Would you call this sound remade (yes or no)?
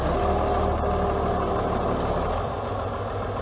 no